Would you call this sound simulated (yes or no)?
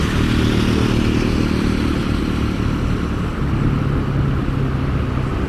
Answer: no